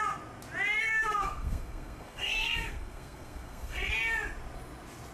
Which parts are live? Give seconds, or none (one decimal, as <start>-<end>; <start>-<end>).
0.0-0.8; 3.9-5.1